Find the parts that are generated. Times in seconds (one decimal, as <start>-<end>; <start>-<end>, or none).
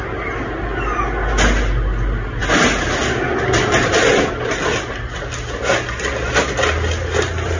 none